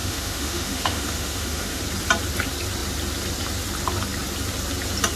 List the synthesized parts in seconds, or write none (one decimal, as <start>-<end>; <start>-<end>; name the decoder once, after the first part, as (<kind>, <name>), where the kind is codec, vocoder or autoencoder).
0.0-1.8 (autoencoder, DAC-VAE)

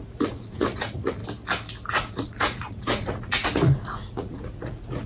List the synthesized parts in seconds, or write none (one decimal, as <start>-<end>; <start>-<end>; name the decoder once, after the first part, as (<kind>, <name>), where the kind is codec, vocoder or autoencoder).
0.0-1.2 (vocoder, Vocos); 1.9-5.1

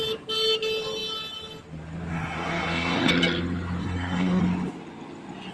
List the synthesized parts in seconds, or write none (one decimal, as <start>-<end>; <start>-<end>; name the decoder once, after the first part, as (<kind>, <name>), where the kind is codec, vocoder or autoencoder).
2.1-3.1 (codec, SNAC); 3.8-4.4